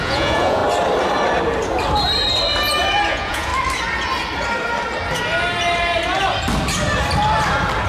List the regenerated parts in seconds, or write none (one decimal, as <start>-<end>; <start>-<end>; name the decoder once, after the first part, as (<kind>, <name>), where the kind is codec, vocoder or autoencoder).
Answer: 0.0-0.6 (vocoder, Vocos); 3.1-3.5